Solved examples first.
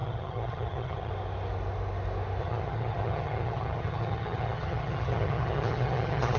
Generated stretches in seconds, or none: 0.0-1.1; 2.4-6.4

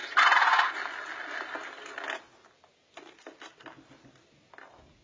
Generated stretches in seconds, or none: none

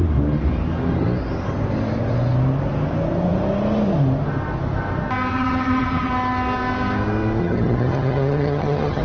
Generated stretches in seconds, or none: 5.3-6.1; 7.4-9.0